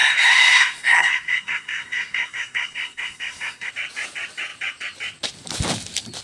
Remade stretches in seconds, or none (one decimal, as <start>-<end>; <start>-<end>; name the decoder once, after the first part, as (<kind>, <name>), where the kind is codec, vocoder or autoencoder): 0.0-3.7 (codec, SNAC)